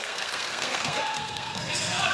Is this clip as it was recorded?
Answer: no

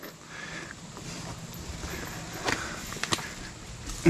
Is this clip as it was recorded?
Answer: yes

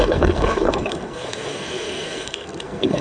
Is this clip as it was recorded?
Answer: no